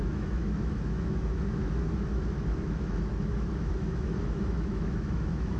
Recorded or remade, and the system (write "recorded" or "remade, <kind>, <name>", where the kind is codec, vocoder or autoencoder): remade, autoencoder, DAC-VAE